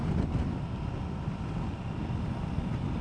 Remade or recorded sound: recorded